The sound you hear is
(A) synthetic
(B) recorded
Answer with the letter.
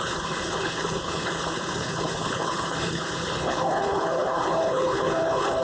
A